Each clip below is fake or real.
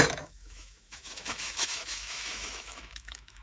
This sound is fake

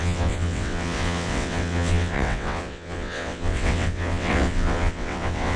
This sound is fake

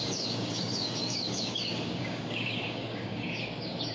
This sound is fake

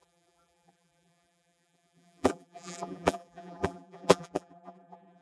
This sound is fake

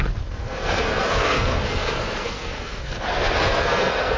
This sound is fake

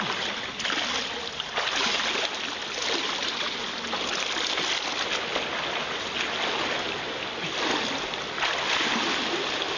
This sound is real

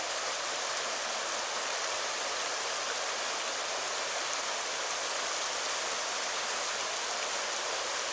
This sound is real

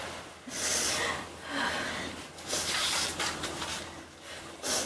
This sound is real